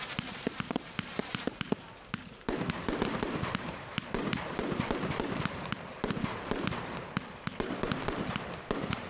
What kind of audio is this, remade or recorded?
remade